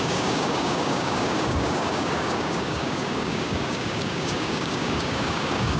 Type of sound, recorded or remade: remade